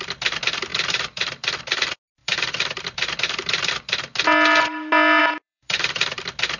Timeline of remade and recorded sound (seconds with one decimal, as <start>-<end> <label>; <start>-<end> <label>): 0.0-0.7 recorded; 0.7-1.6 remade; 1.6-2.2 recorded; 2.2-3.7 remade; 3.7-5.2 recorded; 5.2-6.0 remade; 6.0-6.6 recorded